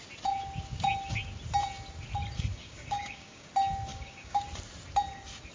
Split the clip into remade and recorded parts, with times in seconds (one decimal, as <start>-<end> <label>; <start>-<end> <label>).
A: 0.0-2.5 recorded; 2.5-3.5 remade; 3.5-3.9 recorded; 3.9-4.4 remade; 4.4-5.5 recorded

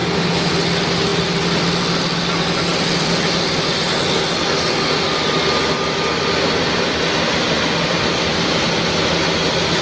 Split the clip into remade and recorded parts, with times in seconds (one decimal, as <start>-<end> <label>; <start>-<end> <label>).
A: 0.0-0.5 remade; 0.5-9.8 recorded

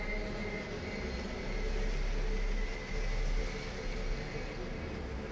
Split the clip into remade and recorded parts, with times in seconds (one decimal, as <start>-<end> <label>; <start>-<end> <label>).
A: 0.0-5.3 recorded

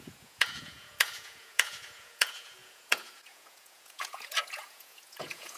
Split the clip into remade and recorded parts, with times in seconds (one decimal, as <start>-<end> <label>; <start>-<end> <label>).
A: 0.0-5.6 remade

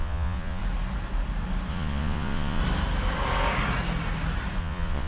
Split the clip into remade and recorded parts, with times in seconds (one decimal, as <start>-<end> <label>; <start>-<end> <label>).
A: 0.0-0.6 remade; 0.6-1.7 recorded; 1.7-2.6 remade; 2.6-4.6 recorded; 4.6-5.1 remade

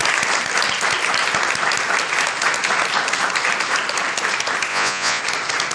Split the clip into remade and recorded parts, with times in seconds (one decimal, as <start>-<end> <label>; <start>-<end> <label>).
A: 0.0-4.7 recorded; 4.7-5.2 remade; 5.2-5.7 recorded

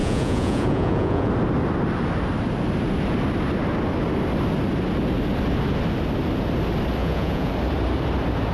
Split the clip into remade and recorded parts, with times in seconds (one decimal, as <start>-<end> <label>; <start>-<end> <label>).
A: 0.0-1.3 remade; 1.3-7.0 recorded; 7.0-7.5 remade; 7.5-8.5 recorded

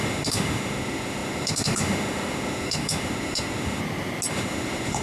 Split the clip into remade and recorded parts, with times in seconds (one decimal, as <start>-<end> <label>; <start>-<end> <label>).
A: 0.0-3.8 remade; 3.8-4.3 recorded; 4.3-5.0 remade